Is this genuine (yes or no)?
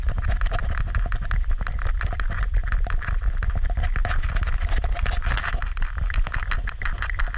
yes